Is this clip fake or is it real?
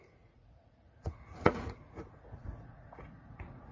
fake